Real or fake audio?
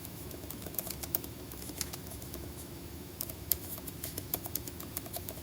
fake